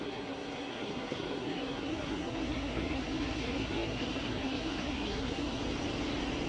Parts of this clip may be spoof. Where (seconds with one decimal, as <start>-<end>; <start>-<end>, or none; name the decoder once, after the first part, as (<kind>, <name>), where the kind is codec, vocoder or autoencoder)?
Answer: 0.0-5.6 (codec, SNAC)